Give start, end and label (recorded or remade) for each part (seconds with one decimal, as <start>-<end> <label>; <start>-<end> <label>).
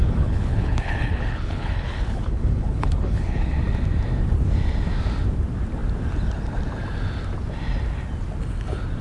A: 0.0-3.5 remade; 3.5-9.0 recorded